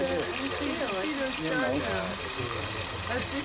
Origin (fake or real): real